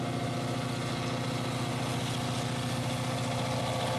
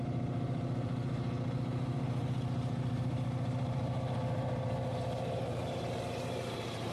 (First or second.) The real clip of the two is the first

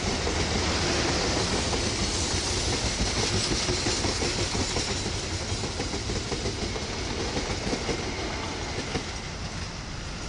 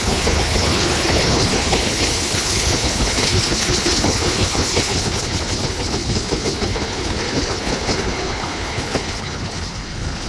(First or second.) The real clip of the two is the first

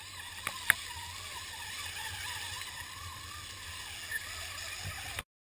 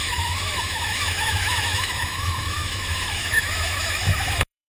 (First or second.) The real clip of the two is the first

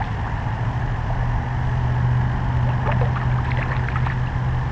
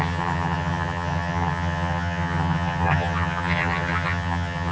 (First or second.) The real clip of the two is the first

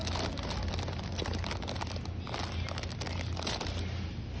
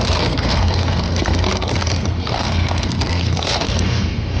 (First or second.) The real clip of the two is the first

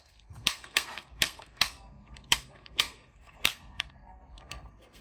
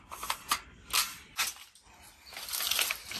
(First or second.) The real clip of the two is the second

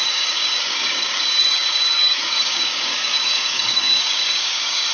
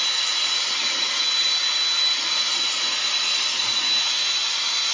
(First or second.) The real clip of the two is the second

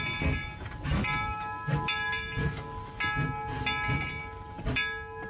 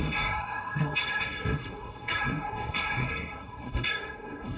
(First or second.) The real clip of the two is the first